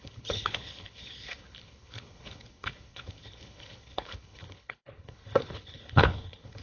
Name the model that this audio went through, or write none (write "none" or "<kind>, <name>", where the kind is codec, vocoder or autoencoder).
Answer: codec, HILCodec